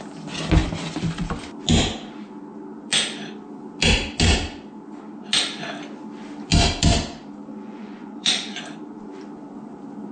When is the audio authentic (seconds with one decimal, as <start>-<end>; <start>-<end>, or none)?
0.0-7.5; 8.6-10.1